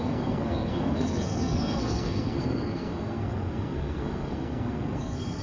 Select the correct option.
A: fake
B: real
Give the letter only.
A